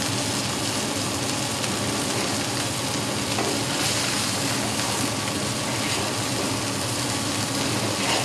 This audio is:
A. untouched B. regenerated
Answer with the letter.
A